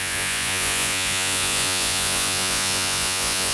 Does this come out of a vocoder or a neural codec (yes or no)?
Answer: yes